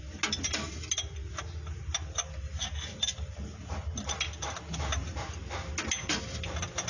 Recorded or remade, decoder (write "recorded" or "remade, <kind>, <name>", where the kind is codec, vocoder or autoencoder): recorded